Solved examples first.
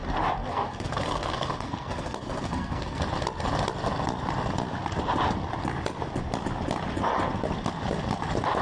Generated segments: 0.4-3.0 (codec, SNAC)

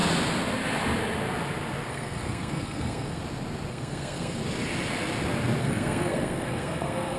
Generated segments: 1.9-3.2 (codec, SNAC); 3.7-4.4; 5.6-7.2